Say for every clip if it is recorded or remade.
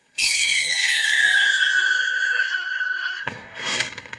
remade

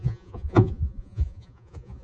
remade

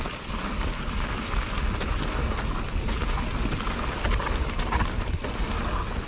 recorded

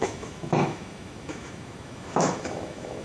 remade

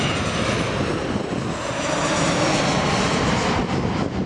recorded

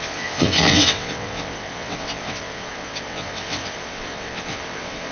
remade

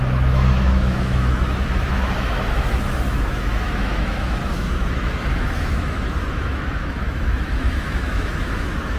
remade